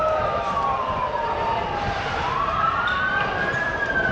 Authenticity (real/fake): fake